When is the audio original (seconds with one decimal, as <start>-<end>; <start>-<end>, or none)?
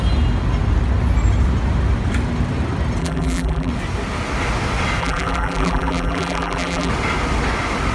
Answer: 0.0-3.0; 3.7-5.0; 6.9-7.9